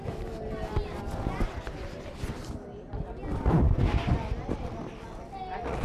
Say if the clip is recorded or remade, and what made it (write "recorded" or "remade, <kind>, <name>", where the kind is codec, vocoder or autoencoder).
recorded